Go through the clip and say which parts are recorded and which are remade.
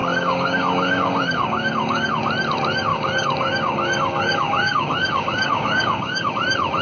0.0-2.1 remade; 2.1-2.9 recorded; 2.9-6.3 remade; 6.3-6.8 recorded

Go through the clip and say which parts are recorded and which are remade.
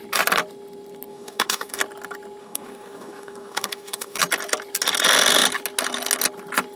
0.0-1.1 recorded; 1.1-1.8 remade; 1.8-2.4 recorded; 2.4-4.2 remade; 4.2-6.8 recorded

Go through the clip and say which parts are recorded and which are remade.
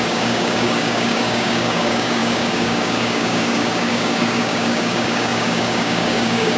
0.0-6.6 remade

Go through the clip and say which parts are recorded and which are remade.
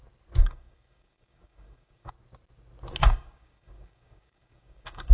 0.0-0.4 recorded; 0.4-2.1 remade; 2.1-3.0 recorded; 3.0-5.1 remade